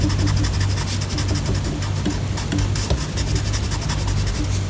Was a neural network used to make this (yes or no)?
no